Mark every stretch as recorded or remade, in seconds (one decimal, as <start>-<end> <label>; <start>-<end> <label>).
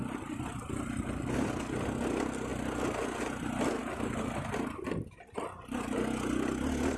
0.0-7.0 recorded